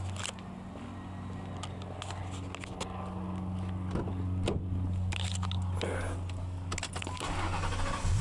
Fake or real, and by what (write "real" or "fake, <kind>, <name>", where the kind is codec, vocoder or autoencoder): real